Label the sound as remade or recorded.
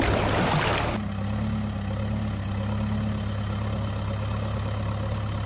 recorded